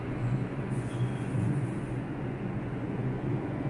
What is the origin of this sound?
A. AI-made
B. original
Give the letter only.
A